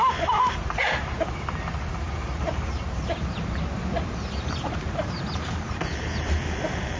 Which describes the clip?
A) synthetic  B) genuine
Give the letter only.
A